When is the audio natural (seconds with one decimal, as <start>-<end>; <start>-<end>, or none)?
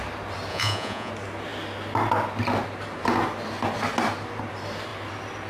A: 0.0-0.5; 1.1-5.5